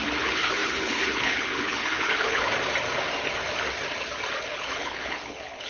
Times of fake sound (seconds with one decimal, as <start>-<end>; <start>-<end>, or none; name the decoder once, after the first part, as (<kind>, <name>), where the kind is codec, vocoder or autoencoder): 0.0-2.5 (codec, HILCodec); 4.4-5.7